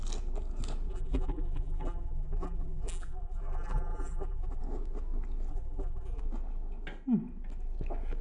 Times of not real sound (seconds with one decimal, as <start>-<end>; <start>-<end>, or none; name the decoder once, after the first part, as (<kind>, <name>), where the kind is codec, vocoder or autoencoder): 0.9-4.6 (vocoder, BigVGAN v2); 5.5-6.2